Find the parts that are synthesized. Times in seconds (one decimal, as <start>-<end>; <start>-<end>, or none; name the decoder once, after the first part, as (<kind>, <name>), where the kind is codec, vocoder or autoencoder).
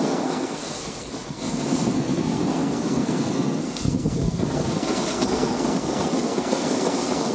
0.0-7.3 (codec, SNAC)